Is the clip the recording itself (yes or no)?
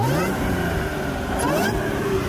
yes